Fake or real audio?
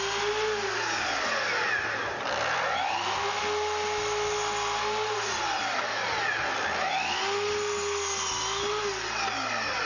real